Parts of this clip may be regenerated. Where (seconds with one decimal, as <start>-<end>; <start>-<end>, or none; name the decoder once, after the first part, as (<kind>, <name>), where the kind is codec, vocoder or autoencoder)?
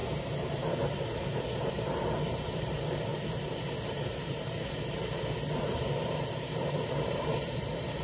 0.0-3.1 (vocoder, BigVGAN v2); 4.0-5.0; 5.6-8.0